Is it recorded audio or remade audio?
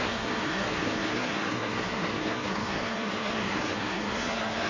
remade